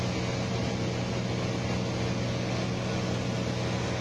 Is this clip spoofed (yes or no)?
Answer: no